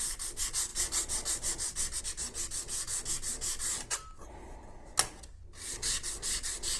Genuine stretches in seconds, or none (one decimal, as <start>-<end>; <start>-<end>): 0.0-6.8